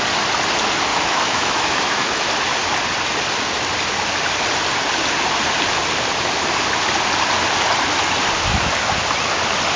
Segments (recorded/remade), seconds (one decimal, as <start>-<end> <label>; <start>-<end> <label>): 0.0-0.9 recorded; 0.9-2.3 remade; 2.3-9.8 recorded

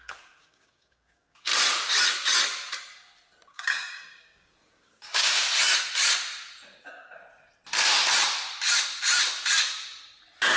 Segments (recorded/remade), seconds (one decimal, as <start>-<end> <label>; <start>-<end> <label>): 0.0-1.5 remade; 1.5-3.5 recorded; 3.5-5.4 remade; 5.4-6.8 recorded; 6.8-7.2 remade; 7.2-10.6 recorded

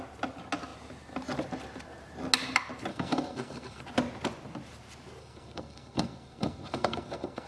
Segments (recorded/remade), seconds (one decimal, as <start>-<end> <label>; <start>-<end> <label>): 0.0-2.9 recorded; 2.9-3.8 remade; 3.8-5.2 recorded; 5.2-7.5 remade

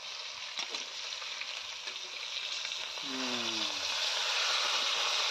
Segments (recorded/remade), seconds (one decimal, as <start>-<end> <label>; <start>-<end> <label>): 0.0-4.2 recorded; 4.2-5.3 remade

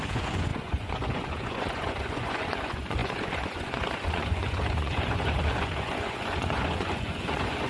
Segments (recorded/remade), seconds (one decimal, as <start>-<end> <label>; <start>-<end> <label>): 0.0-7.7 remade